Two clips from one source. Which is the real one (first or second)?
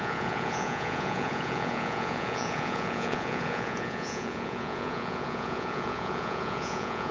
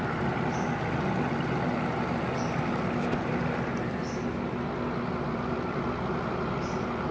second